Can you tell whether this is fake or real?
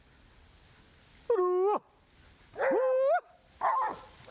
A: real